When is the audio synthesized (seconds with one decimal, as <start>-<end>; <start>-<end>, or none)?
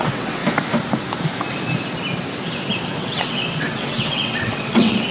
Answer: 0.0-0.4; 3.0-5.1